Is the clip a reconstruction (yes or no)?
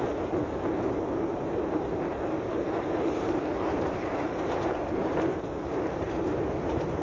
yes